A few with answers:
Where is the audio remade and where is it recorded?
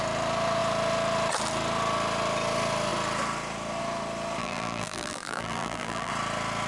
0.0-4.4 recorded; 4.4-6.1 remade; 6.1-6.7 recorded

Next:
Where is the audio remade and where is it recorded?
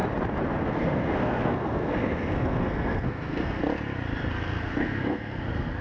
0.0-0.7 recorded; 0.7-3.6 remade; 3.6-4.3 recorded; 4.3-5.8 remade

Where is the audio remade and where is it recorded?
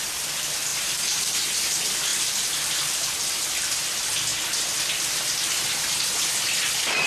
0.0-0.7 recorded; 0.7-1.5 remade; 1.5-7.1 recorded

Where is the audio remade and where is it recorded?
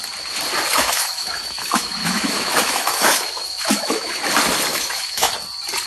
0.0-0.7 recorded; 0.7-4.2 remade; 4.2-4.7 recorded; 4.7-5.3 remade; 5.3-5.9 recorded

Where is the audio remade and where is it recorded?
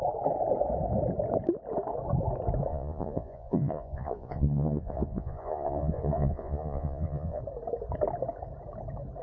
0.0-2.7 recorded; 2.7-7.4 remade; 7.4-9.2 recorded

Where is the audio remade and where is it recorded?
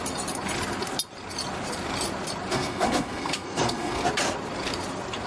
0.0-2.5 recorded; 2.5-4.0 remade; 4.0-5.3 recorded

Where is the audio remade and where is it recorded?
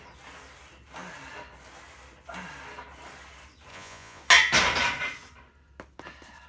0.0-3.7 recorded; 3.7-4.2 remade; 4.2-6.5 recorded